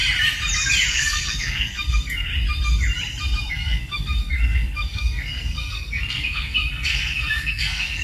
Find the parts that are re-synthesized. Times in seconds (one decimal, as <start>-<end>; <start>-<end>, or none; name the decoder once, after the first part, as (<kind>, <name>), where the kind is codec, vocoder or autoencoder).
0.9-2.3 (codec, SNAC); 3.5-8.0